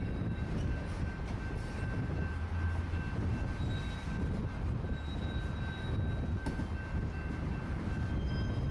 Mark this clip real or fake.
real